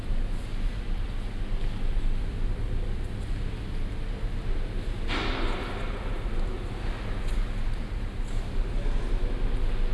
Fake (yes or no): no